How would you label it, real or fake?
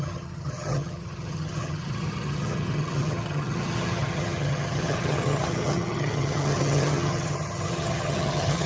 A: fake